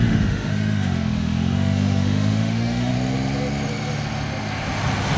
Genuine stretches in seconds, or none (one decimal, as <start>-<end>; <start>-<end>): 2.9-5.2